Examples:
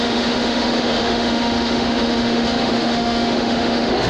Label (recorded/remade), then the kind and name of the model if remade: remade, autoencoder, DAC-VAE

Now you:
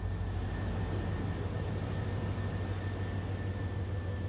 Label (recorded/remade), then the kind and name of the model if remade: recorded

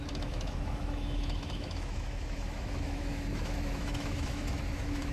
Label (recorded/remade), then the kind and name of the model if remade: remade, autoencoder, DAC-VAE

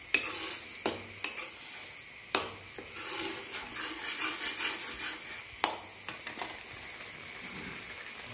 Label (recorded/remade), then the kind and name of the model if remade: recorded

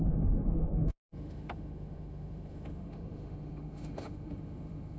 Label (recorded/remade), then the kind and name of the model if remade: remade, autoencoder, DAC-VAE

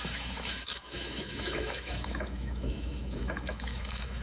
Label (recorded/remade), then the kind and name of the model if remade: remade, autoencoder, DAC-VAE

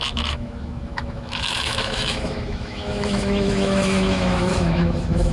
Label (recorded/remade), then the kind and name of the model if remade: remade, autoencoder, DAC-VAE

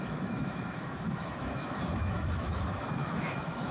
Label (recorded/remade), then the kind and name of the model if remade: remade, autoencoder, DAC-VAE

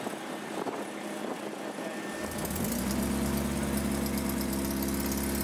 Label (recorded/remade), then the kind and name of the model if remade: recorded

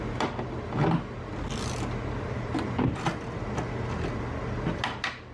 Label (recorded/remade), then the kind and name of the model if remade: recorded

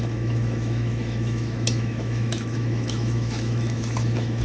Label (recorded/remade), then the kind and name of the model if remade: remade, autoencoder, DAC-VAE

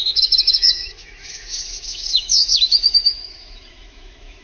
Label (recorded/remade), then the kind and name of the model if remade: remade, autoencoder, DAC-VAE